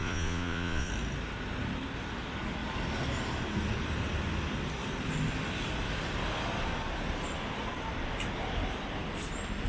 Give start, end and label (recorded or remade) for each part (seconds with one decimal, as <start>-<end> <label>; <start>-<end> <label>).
0.0-0.9 remade; 0.9-9.7 recorded